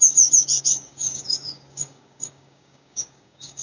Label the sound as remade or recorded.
remade